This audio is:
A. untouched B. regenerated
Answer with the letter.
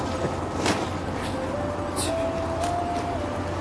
A